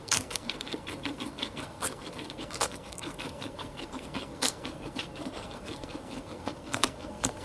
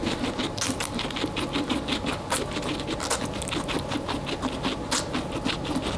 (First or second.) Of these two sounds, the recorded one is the second